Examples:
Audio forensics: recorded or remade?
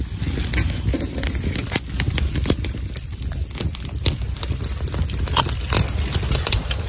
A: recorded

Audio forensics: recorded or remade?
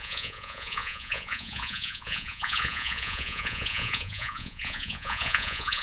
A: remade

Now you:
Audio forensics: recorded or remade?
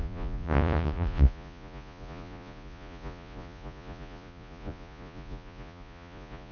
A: remade